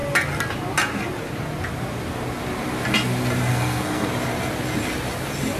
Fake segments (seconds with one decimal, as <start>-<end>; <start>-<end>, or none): 3.5-4.1